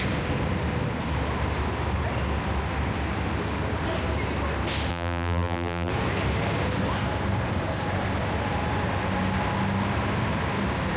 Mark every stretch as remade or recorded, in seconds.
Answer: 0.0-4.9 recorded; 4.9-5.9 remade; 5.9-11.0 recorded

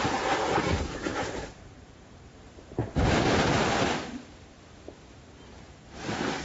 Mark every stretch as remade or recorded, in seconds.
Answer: 0.0-2.8 remade; 2.8-5.5 recorded; 5.5-6.4 remade